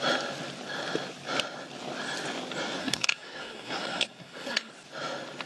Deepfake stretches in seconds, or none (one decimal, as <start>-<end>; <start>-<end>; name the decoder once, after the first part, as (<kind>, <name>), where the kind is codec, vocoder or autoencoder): 2.8-4.7 (codec, SNAC)